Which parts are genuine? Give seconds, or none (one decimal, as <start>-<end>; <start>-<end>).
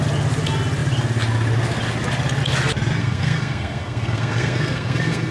0.0-3.0